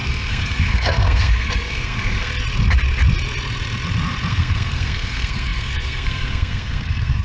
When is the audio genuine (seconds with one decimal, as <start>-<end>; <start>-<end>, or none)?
2.3-4.3

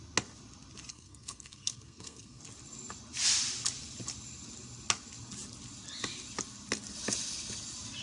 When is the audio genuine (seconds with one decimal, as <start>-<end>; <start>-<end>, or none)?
0.0-0.9; 2.4-8.0

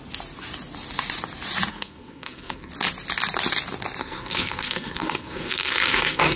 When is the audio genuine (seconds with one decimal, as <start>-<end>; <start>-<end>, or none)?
0.0-1.7; 2.7-4.0

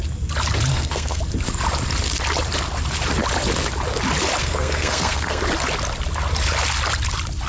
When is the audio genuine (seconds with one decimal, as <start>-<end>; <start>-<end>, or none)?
0.0-0.7; 1.2-4.4; 5.4-7.5

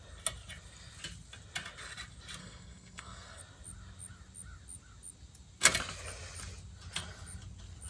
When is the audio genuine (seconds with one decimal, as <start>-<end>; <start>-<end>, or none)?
0.0-2.4; 3.4-7.9

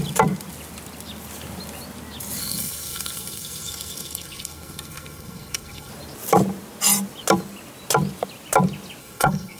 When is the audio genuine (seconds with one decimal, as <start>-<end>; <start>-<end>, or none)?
0.0-2.4; 5.9-9.0